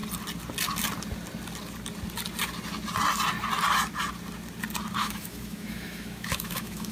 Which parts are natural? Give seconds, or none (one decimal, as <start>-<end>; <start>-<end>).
0.0-5.0